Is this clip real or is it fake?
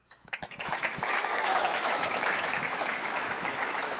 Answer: fake